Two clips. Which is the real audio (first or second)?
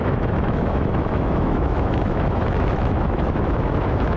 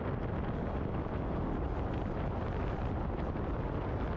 second